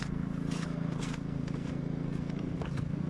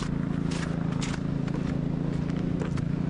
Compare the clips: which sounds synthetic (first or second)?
first